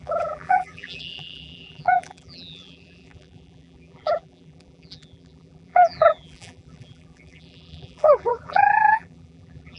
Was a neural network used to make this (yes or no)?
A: yes